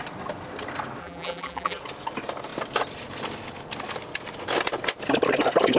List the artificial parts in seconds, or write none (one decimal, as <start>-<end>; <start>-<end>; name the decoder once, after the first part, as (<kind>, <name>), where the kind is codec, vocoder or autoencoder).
1.0-1.8 (vocoder, BigVGAN v2)